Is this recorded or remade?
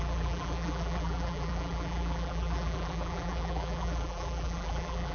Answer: remade